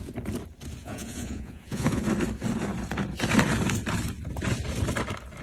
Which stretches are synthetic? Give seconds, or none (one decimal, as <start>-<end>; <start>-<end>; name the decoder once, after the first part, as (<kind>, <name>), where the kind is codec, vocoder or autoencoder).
0.8-2.0 (vocoder, Vocos)